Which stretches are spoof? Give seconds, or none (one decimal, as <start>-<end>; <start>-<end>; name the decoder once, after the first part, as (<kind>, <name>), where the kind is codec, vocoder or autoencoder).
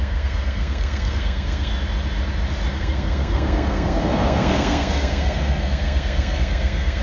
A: 0.0-1.7 (codec, SNAC); 2.7-7.0